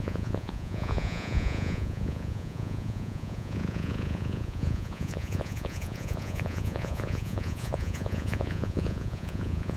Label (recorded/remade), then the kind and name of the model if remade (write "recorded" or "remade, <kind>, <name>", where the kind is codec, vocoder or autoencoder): remade, vocoder, Vocos